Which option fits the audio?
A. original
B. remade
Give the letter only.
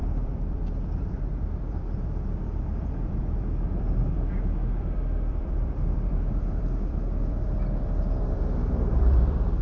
B